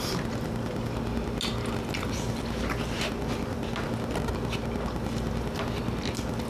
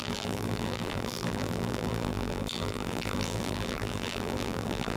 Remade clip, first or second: second